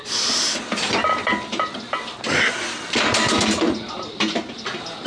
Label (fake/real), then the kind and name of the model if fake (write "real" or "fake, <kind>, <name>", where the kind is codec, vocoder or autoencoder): fake, vocoder, BigVGAN v2